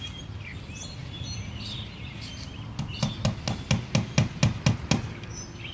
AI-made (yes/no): no